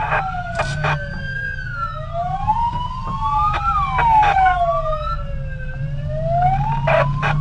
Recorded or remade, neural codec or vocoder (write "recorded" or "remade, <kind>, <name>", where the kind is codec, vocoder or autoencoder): recorded